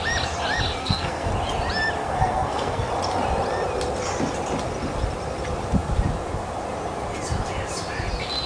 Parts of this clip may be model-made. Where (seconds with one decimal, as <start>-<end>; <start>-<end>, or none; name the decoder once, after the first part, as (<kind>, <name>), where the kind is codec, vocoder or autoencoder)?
0.8-1.3 (codec, SNAC); 2.0-2.9